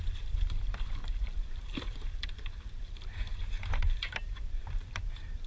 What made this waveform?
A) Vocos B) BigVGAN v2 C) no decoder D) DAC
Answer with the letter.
B